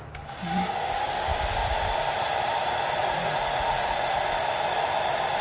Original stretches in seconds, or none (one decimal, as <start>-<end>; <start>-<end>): 0.0-3.0; 4.1-5.4